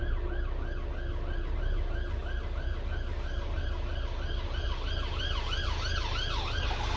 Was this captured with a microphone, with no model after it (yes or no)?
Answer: yes